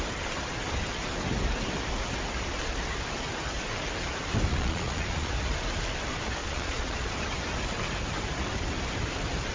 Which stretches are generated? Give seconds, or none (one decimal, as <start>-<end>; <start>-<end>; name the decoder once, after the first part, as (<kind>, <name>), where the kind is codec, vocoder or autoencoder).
4.5-5.3 (vocoder, Vocos); 6.4-7.1